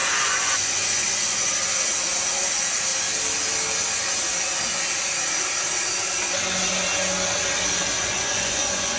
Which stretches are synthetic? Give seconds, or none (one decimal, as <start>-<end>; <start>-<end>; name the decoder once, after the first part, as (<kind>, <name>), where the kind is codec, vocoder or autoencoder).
0.0-1.5 (vocoder, Vocos); 7.9-9.0